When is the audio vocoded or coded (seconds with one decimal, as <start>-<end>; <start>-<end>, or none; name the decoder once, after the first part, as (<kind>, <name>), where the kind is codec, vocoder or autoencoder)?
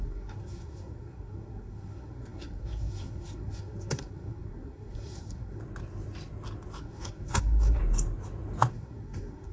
0.0-5.6 (codec, SNAC); 6.8-7.8; 8.7-9.5